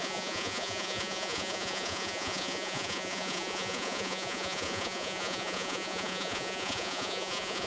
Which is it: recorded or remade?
remade